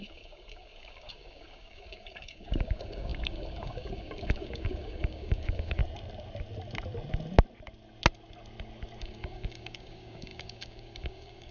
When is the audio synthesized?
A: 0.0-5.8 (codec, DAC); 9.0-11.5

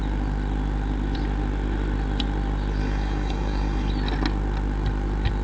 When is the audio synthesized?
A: 2.8-3.9 (codec, DAC)

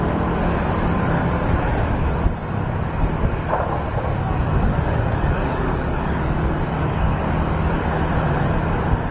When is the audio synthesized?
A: 4.7-7.7 (codec, DAC)

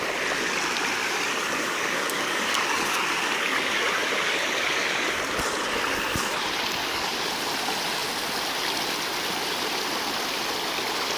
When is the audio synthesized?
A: 1.0-5.2 (codec, DAC); 6.8-7.3

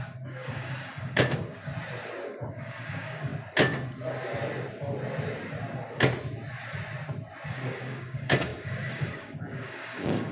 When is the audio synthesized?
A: 0.0-1.7 (codec, DAC); 2.5-3.3; 7.5-10.3

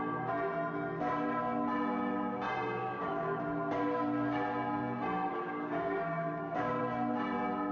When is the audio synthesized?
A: 2.8-3.4 (codec, DAC); 5.3-6.8